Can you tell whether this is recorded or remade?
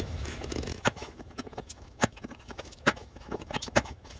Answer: remade